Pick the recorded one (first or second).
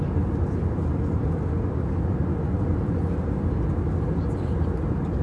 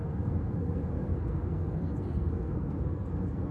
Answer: first